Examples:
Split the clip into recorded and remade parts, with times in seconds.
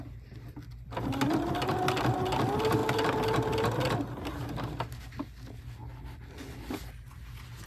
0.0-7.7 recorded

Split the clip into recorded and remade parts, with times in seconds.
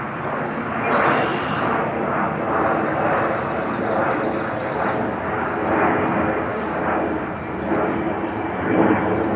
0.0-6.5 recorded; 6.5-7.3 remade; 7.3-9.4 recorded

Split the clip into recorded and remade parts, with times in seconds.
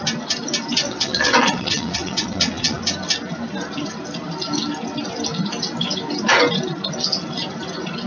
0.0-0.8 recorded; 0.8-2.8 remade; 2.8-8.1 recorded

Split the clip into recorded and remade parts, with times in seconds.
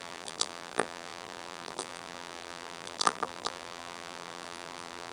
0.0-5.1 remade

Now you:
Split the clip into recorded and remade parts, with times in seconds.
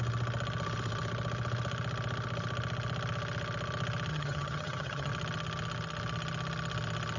0.0-4.1 recorded; 4.1-5.1 remade; 5.1-7.2 recorded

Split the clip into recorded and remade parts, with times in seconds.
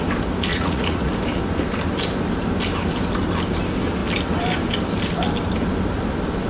0.0-0.5 recorded; 0.5-1.1 remade; 1.1-6.5 recorded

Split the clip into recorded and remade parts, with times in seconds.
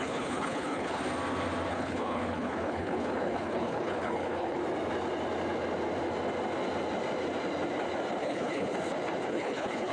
0.0-1.0 remade; 1.0-1.7 recorded; 1.7-4.6 remade; 4.6-8.2 recorded; 8.2-8.7 remade; 8.7-9.3 recorded; 9.3-9.9 remade